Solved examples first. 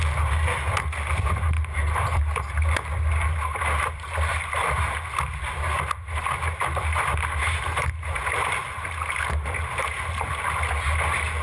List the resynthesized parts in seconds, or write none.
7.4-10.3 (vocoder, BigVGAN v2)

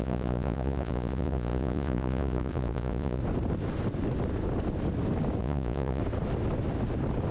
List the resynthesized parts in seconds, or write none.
0.0-3.2 (vocoder, Vocos); 5.4-6.0

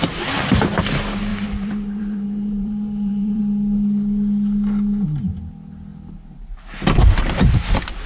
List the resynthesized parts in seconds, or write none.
1.3-3.4 (vocoder, BigVGAN v2)

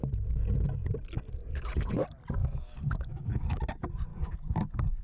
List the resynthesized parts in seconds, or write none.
1.4-2.0 (codec, DAC); 2.4-3.6; 4.1-5.0

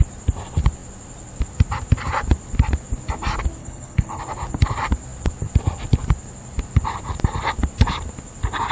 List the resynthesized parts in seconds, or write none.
3.6-4.2 (codec, HILCodec)